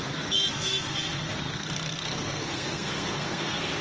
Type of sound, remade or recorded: remade